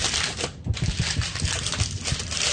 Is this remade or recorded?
recorded